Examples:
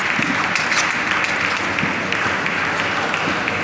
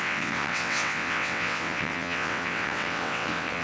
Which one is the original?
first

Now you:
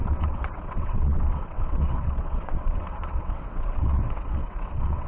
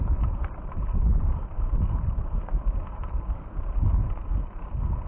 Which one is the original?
second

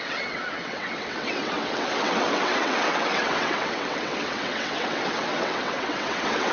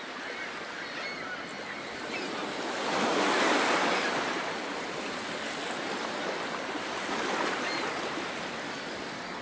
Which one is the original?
second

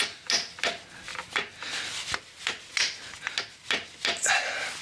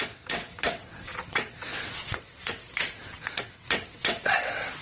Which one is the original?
first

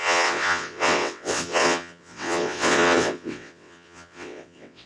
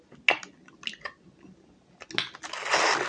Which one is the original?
second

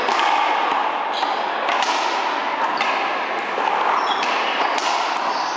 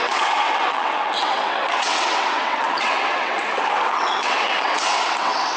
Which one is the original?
first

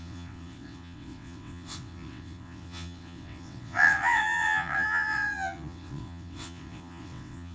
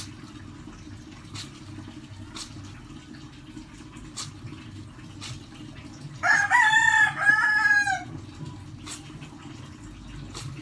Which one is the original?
second